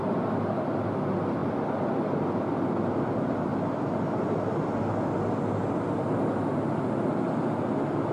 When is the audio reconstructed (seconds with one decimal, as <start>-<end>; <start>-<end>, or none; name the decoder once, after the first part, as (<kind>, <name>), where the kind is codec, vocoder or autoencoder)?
none